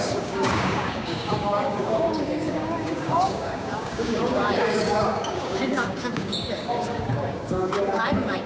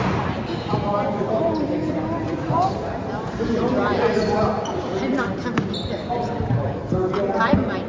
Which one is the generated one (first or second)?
first